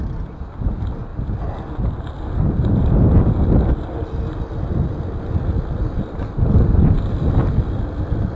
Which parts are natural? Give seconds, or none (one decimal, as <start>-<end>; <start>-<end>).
0.0-8.4